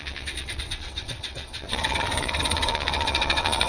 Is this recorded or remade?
remade